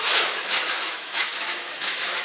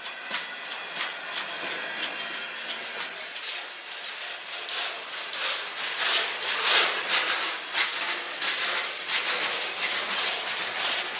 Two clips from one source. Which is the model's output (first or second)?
first